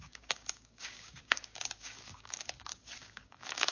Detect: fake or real fake